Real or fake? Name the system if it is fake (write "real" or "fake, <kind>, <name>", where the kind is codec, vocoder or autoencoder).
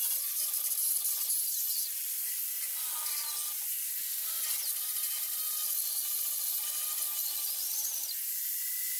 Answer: real